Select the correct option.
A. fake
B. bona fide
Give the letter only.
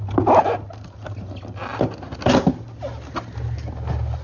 B